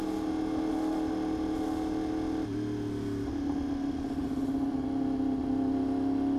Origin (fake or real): real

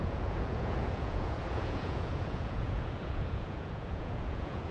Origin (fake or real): fake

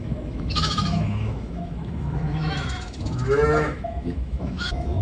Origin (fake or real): fake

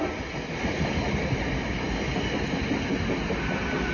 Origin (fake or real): real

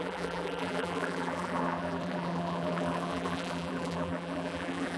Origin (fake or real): fake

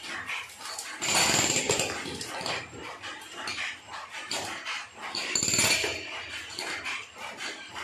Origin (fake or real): fake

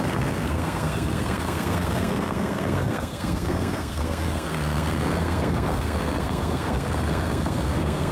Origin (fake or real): fake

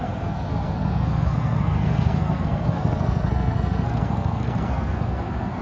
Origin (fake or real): fake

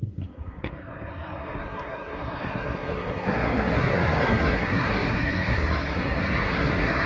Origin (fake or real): fake